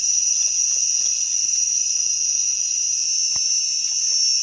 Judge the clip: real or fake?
real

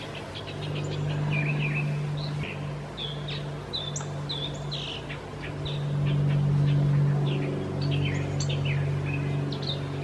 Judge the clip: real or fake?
real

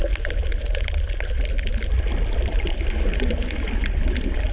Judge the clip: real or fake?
real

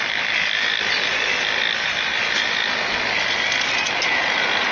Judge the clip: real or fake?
real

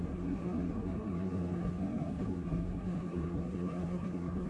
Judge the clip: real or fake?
fake